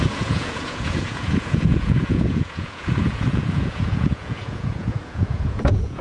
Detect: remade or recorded remade